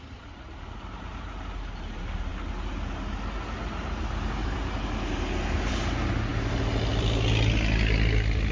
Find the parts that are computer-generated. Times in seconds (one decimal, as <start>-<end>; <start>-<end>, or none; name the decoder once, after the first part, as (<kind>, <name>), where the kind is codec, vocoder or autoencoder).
none